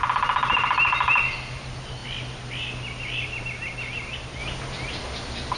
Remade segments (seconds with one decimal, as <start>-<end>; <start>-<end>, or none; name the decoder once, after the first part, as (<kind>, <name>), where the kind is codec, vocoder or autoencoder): none